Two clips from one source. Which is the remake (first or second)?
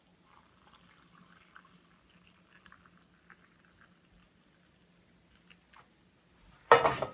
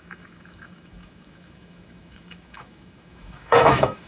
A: second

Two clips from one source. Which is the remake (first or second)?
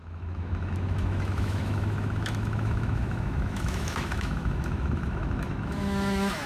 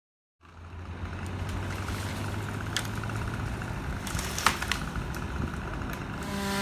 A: first